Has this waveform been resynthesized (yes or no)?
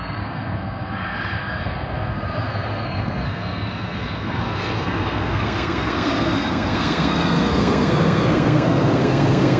yes